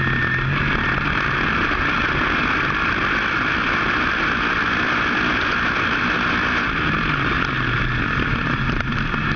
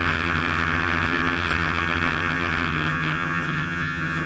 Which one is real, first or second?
first